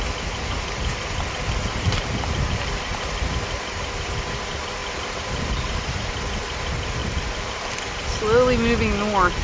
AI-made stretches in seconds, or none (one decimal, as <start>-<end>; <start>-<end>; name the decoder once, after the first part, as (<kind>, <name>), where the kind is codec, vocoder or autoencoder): 4.8-5.8 (vocoder, BigVGAN v2); 7.0-7.8